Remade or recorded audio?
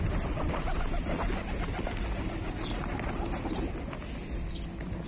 recorded